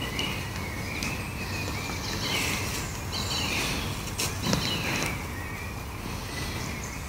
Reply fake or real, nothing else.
real